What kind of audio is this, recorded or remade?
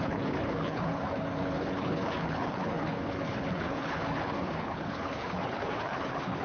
remade